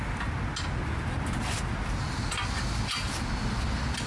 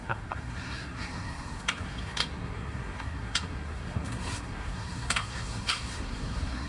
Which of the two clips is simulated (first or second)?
second